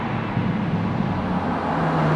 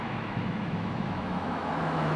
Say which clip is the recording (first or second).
first